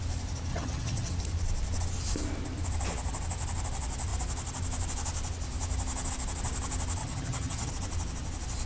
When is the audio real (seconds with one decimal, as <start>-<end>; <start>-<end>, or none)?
0.0-0.5; 1.1-7.0; 7.7-8.7